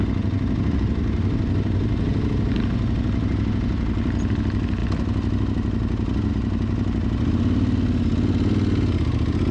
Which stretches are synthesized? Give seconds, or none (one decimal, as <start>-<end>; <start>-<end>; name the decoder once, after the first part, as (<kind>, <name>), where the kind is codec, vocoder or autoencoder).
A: none